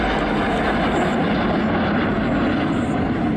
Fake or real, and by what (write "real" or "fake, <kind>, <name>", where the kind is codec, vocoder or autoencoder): real